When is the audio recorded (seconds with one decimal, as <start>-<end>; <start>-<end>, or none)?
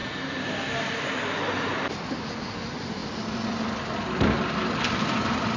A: 0.0-5.6